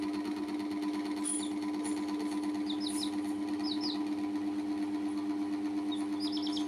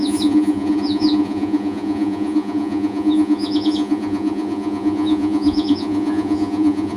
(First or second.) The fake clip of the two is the second